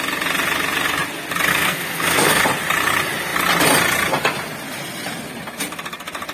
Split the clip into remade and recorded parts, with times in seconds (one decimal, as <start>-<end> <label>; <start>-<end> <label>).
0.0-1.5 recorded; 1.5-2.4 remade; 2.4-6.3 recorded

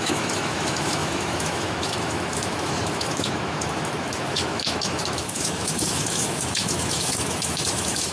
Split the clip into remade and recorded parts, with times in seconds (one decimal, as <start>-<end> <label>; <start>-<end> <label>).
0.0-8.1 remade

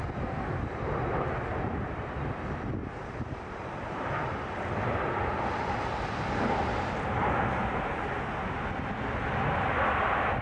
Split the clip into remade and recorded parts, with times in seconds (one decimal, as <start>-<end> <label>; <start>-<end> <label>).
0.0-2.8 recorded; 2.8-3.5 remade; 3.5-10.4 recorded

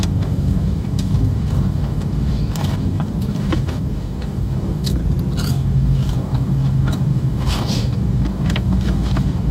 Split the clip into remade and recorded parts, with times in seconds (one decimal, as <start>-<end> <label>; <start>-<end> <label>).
0.0-5.0 remade; 5.0-5.5 recorded; 5.5-9.5 remade

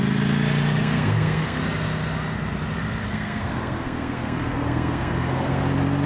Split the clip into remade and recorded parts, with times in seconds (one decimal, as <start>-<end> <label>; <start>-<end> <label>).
0.0-0.8 recorded; 0.8-1.6 remade; 1.6-3.1 recorded; 3.1-5.6 remade; 5.6-6.1 recorded

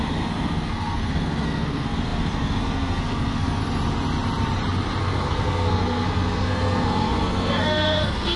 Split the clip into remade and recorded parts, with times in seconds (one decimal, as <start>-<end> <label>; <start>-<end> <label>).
0.0-3.6 remade; 3.6-5.0 recorded; 5.0-8.4 remade